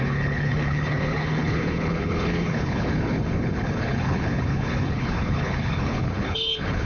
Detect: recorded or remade remade